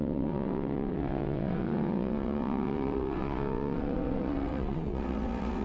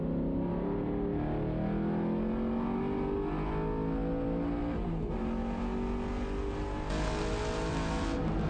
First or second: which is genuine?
second